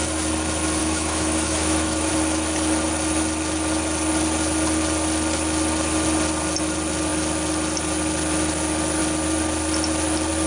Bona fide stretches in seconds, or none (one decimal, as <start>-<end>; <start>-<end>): 0.0-0.8; 2.1-10.5